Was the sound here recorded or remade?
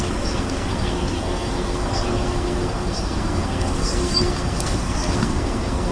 remade